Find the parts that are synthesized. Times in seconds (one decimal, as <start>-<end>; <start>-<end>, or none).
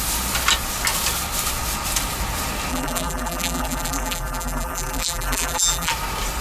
2.7-5.9